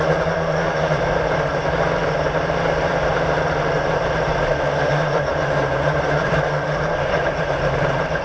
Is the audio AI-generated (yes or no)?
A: yes